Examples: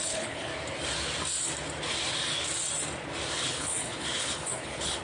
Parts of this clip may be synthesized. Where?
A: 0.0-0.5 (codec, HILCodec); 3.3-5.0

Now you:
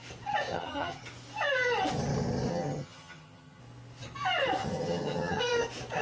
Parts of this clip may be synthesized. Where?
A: 0.5-1.0 (vocoder, HiFi-GAN); 2.5-3.6; 4.6-5.4

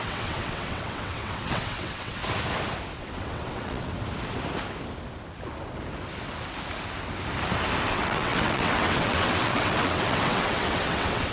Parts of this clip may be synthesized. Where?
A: 0.0-2.2 (vocoder, WaveNeXt); 3.0-3.9; 7.9-11.3

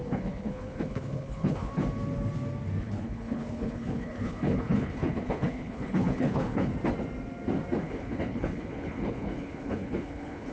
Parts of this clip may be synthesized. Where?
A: 0.0-1.7 (codec, HILCodec); 2.8-6.7; 7.8-10.5

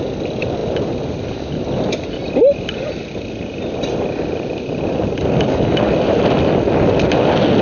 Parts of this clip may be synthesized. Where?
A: none

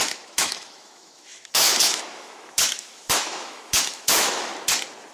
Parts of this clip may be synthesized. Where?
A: 0.0-4.5 (autoencoder, DAC-VAE)

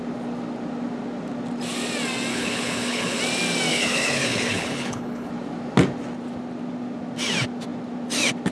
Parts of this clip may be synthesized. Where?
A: 2.3-3.2 (codec, HILCodec); 3.7-5.3